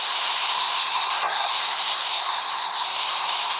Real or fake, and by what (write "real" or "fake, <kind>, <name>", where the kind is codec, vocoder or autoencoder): fake, codec, SNAC